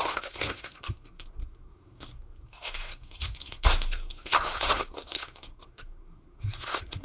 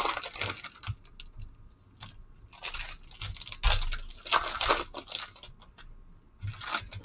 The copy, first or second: first